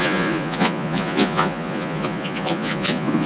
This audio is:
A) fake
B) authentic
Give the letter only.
A